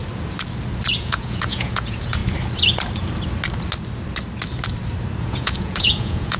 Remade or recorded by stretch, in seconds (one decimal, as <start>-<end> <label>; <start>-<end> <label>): 0.0-1.0 recorded; 1.0-2.2 remade; 2.2-5.2 recorded; 5.2-6.4 remade